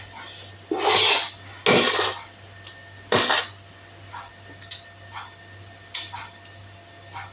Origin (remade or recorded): recorded